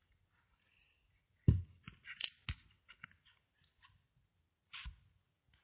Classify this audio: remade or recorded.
recorded